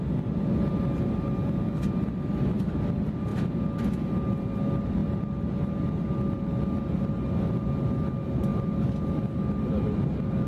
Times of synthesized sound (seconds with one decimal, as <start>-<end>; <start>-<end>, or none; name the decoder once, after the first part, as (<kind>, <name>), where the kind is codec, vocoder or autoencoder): none